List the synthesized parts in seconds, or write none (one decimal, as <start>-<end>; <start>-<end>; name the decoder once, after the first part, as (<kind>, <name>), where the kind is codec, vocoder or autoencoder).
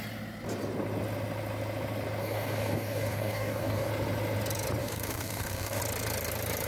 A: 2.2-3.9 (codec, DAC); 4.8-5.8